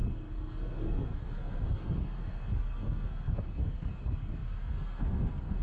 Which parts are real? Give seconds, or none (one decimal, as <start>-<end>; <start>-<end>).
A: none